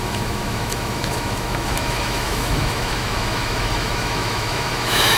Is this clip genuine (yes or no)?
no